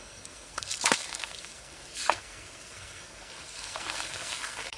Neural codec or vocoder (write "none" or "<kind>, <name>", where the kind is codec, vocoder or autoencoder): codec, SNAC